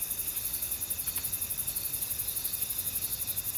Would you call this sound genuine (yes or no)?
yes